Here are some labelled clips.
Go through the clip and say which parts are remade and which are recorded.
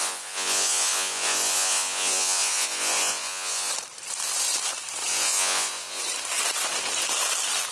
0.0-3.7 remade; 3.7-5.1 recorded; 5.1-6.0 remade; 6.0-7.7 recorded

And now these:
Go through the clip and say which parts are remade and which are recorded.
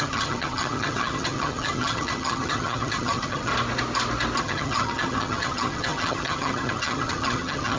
0.0-3.5 remade; 3.5-4.4 recorded; 4.4-7.8 remade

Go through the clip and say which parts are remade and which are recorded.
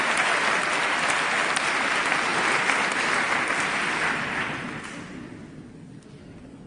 0.0-6.7 recorded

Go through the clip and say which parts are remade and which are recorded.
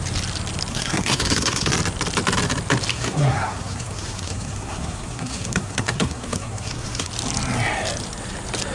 0.0-0.7 recorded; 0.7-1.7 remade; 1.7-2.9 recorded; 2.9-7.1 remade; 7.1-8.7 recorded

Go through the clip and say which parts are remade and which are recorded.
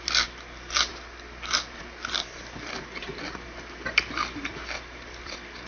0.0-5.7 recorded